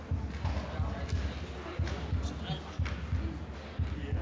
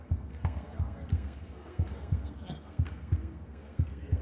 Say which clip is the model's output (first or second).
second